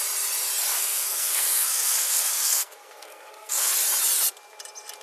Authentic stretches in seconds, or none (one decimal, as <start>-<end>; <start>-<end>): 0.0-0.7; 3.7-5.0